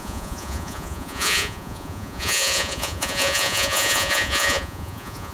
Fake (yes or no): yes